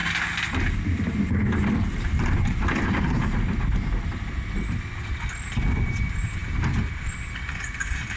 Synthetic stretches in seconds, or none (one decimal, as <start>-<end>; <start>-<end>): none